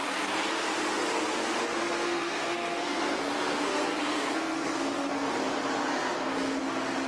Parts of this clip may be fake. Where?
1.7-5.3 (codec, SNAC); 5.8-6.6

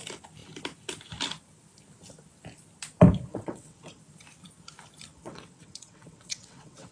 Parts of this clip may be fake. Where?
3.3-4.0 (vocoder, WaveNeXt); 5.1-6.9

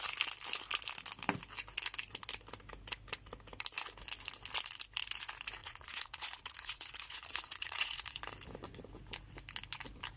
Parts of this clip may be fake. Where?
5.6-8.2 (vocoder, Vocos)

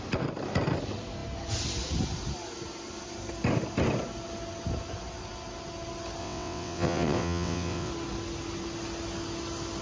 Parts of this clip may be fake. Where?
6.2-7.9 (vocoder, WaveNeXt)

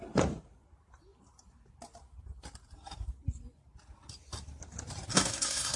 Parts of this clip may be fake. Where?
5.1-5.8 (codec, SNAC)

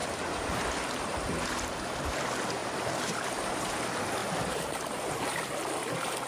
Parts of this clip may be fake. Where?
0.0-0.7 (vocoder, BigVGAN v2); 2.6-3.8; 4.2-5.1

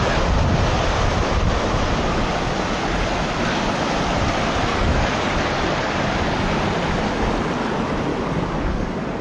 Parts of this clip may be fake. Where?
4.7-5.3 (codec, DAC); 8.1-9.2

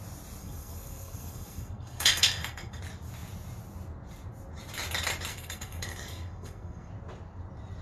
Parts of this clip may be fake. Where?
0.4-2.8 (codec, SNAC); 5.3-6.9